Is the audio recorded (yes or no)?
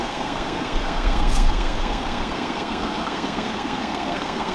no